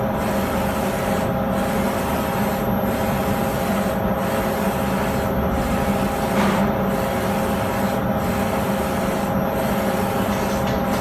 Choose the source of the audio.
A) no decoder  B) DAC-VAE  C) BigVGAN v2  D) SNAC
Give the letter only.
A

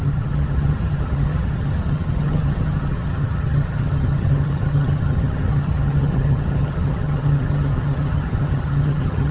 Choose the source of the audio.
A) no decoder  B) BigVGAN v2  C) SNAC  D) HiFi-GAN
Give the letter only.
D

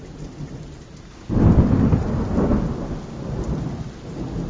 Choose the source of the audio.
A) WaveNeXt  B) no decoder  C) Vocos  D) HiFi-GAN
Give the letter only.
B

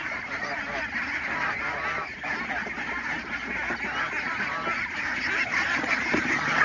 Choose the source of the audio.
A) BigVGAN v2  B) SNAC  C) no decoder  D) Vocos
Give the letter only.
C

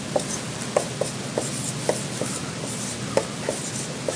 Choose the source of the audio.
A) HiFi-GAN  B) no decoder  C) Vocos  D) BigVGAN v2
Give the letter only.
B